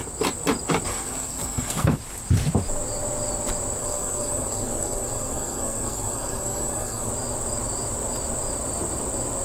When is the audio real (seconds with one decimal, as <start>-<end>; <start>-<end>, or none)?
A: 0.0-0.9; 2.0-3.8; 7.1-9.4